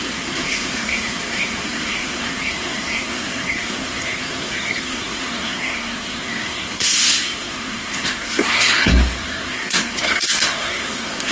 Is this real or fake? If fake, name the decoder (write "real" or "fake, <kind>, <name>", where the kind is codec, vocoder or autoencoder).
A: fake, codec, SNAC